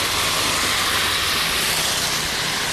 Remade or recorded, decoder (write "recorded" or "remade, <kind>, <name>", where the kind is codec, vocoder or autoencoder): recorded